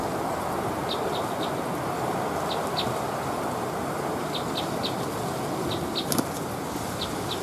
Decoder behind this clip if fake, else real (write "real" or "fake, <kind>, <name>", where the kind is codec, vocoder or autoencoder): real